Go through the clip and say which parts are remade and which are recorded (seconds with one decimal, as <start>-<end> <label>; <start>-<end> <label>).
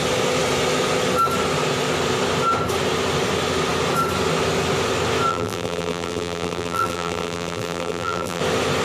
0.0-5.3 recorded; 5.3-8.4 remade; 8.4-8.8 recorded